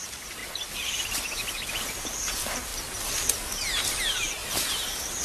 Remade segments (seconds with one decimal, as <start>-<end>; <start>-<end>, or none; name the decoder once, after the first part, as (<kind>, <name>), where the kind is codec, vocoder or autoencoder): 0.0-0.4 (vocoder, BigVGAN v2); 1.7-2.7; 4.0-5.2